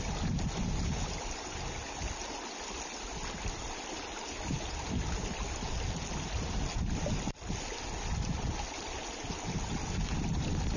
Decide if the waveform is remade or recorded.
recorded